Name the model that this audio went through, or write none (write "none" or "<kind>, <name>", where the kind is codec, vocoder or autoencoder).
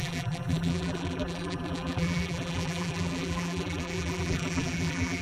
vocoder, BigVGAN v2